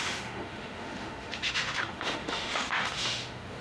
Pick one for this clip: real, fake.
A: fake